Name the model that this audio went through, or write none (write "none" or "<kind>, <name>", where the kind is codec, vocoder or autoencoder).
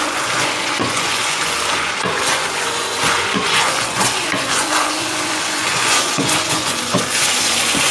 vocoder, Vocos